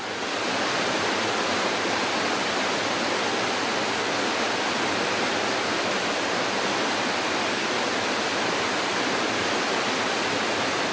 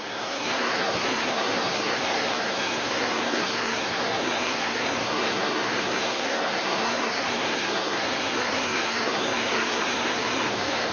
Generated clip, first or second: second